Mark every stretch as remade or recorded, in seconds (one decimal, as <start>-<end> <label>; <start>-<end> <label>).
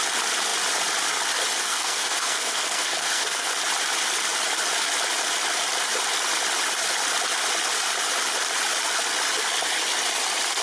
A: 0.0-1.6 recorded; 1.6-3.5 remade; 3.5-10.6 recorded